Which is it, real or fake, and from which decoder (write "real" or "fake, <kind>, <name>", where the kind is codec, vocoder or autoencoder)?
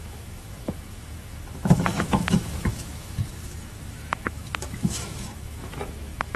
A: fake, autoencoder, DAC-VAE